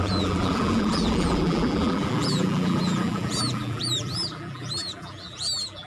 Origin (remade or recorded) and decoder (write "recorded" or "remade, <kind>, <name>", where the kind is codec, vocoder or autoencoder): remade, vocoder, BigVGAN v2